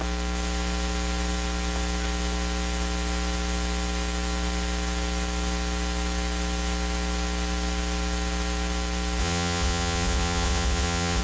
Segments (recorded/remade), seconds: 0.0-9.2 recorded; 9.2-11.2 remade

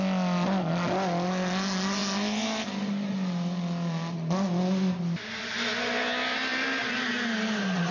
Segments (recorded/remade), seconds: 0.0-7.9 recorded

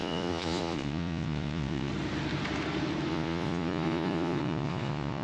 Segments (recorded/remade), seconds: 0.0-1.9 remade; 1.9-3.1 recorded; 3.1-5.2 remade

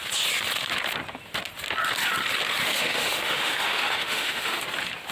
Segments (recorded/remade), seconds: 0.0-2.6 recorded; 2.6-4.6 remade; 4.6-5.1 recorded

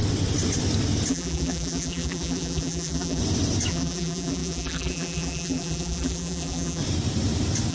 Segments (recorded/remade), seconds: 0.0-1.1 recorded; 1.1-3.2 remade; 3.2-3.7 recorded; 3.7-6.8 remade; 6.8-7.7 recorded

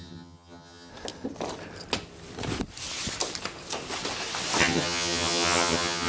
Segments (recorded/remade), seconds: 0.0-0.9 remade; 0.9-4.6 recorded; 4.6-6.1 remade

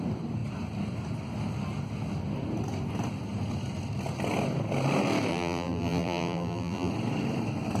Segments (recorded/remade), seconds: 0.0-5.3 recorded; 5.3-6.9 remade; 6.9-7.8 recorded

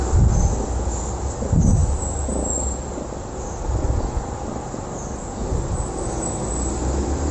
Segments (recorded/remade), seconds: 0.0-7.3 recorded